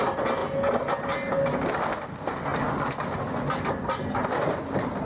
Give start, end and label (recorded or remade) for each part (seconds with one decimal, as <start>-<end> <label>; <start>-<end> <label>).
0.0-5.1 recorded